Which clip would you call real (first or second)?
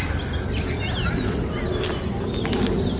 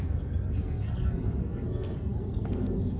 first